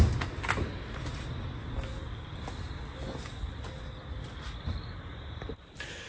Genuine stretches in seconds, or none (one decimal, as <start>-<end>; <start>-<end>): 0.0-6.1